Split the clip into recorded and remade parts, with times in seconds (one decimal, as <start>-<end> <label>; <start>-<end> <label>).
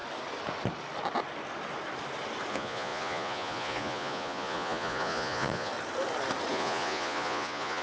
0.0-2.5 recorded; 2.5-5.7 remade; 5.7-6.5 recorded; 6.5-7.8 remade